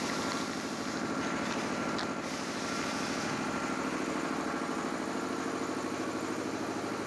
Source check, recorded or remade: recorded